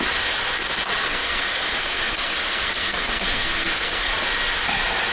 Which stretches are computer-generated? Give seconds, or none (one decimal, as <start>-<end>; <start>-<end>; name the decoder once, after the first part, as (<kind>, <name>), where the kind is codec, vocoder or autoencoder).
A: 1.0-4.1 (codec, SNAC)